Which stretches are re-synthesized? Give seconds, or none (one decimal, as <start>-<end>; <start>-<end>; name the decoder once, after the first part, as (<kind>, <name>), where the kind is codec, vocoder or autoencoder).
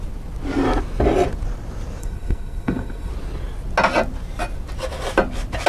2.0-3.1 (codec, SNAC)